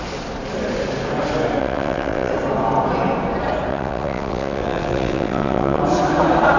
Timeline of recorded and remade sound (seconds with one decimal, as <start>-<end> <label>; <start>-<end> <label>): 0.0-1.6 recorded; 1.6-2.3 remade; 2.3-3.7 recorded; 3.7-5.8 remade; 5.8-6.6 recorded